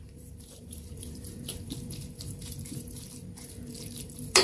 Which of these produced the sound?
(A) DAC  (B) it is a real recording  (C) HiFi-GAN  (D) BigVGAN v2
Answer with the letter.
D